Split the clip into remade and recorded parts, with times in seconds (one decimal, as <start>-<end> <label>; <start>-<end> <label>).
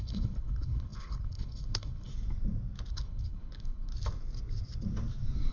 0.0-2.1 remade; 2.1-2.9 recorded; 2.9-3.9 remade; 3.9-5.5 recorded